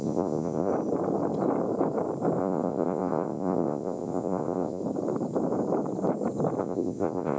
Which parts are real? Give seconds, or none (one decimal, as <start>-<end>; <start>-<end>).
0.7-2.4; 4.8-6.6